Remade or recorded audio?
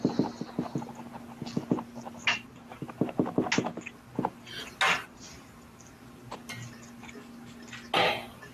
recorded